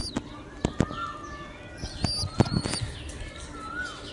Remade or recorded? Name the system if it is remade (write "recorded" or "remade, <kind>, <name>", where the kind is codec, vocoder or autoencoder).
recorded